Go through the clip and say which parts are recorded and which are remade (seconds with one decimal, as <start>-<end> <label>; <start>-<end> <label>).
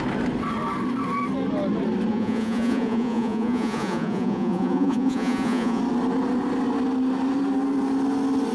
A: 0.0-2.1 recorded; 2.1-5.8 remade; 5.8-8.5 recorded